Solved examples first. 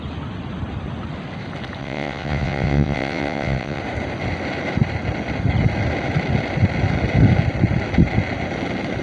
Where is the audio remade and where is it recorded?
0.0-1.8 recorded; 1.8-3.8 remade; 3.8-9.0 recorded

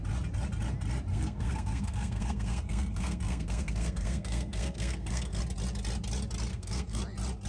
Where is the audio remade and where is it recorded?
0.0-1.1 recorded; 1.1-5.4 remade; 5.4-6.5 recorded; 6.5-7.0 remade; 7.0-7.5 recorded

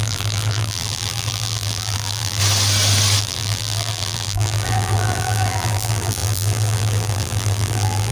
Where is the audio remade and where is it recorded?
0.0-2.4 remade; 2.4-3.2 recorded; 3.2-8.1 remade